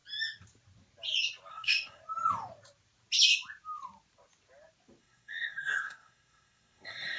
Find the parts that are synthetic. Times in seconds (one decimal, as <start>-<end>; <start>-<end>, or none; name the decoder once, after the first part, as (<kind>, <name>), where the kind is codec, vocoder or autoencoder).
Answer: 1.5-2.0 (codec, SNAC); 5.0-7.2